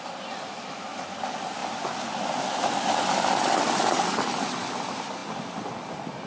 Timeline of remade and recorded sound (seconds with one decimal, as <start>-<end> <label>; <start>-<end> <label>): 0.0-6.3 recorded